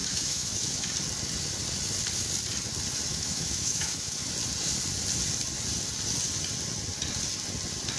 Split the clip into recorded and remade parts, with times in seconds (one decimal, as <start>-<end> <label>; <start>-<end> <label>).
0.0-0.9 remade; 0.9-3.1 recorded; 3.1-4.3 remade; 4.3-8.0 recorded